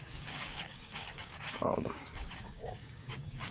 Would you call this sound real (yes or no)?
no